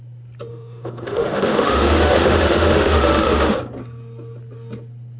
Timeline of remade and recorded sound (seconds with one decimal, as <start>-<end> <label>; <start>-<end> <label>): 0.0-0.5 recorded; 0.5-3.6 remade; 3.6-5.2 recorded